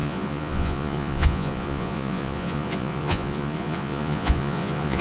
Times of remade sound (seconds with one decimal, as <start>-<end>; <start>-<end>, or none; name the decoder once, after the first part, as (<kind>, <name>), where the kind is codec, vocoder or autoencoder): 0.0-5.0 (vocoder, Vocos)